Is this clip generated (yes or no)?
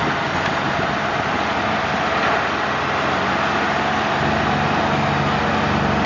no